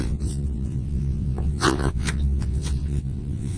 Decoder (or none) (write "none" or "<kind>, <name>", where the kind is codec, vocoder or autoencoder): vocoder, WaveNeXt